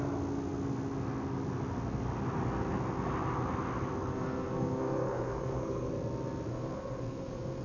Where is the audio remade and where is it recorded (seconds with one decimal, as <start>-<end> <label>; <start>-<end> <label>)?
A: 0.0-4.1 recorded; 4.1-5.9 remade; 5.9-6.5 recorded; 6.5-7.6 remade